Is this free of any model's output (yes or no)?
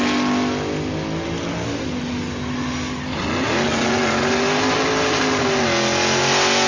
yes